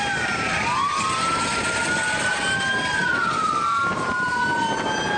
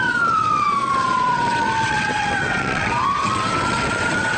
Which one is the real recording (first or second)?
first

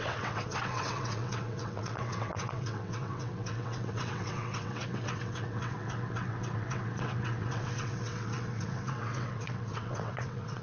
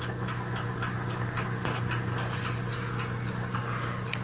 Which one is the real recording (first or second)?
second